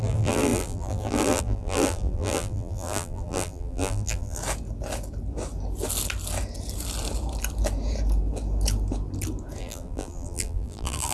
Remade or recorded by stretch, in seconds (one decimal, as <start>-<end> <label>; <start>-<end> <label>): 0.0-4.4 remade; 4.4-9.6 recorded; 9.6-11.1 remade